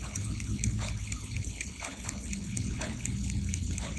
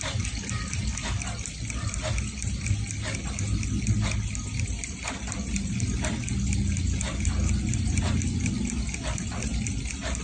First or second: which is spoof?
first